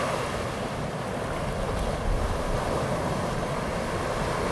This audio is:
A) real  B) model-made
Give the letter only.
A